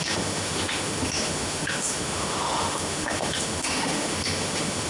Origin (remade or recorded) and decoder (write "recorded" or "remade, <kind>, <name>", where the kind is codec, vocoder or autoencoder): remade, autoencoder, DAC-VAE